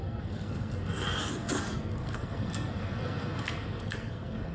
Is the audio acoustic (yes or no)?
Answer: no